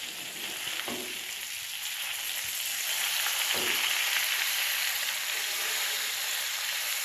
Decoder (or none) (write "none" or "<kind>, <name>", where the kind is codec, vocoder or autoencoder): none